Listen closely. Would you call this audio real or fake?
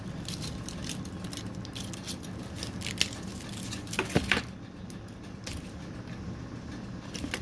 real